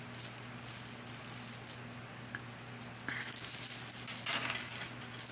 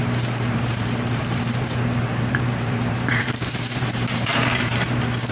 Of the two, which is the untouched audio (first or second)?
first